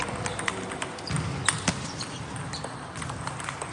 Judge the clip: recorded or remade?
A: recorded